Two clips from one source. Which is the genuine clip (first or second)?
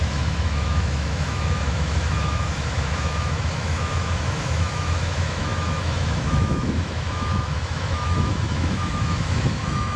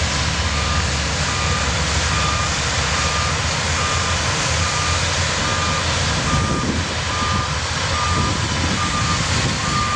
second